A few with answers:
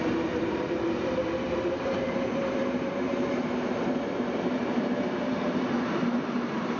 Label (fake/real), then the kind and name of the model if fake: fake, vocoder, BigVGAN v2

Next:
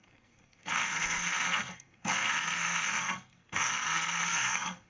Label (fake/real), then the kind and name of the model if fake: fake, codec, SNAC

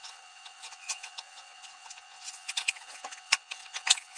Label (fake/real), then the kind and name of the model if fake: fake, vocoder, WaveNeXt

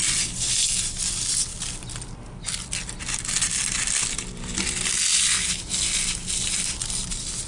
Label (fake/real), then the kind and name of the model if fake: real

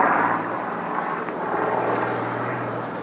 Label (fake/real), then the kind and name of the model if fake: fake, vocoder, BigVGAN v2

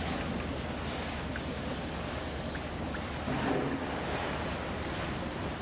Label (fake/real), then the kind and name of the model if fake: real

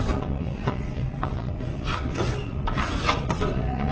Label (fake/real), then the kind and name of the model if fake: fake, vocoder, WaveNeXt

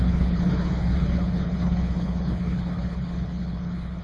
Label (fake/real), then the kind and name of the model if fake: fake, codec, HILCodec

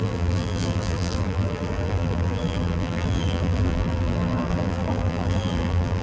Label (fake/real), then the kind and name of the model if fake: fake, vocoder, BigVGAN v2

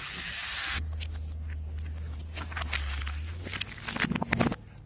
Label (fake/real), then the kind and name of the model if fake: real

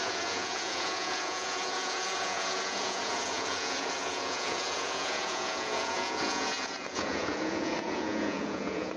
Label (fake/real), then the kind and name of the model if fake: fake, vocoder, Vocos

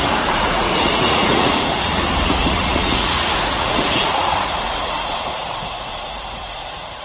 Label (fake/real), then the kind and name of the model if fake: fake, vocoder, Vocos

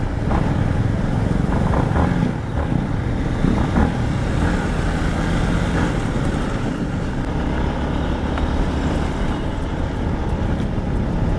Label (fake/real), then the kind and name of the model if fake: real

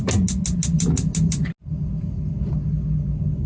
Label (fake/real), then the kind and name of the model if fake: real